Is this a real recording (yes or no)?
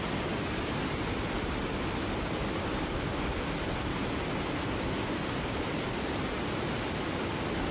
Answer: yes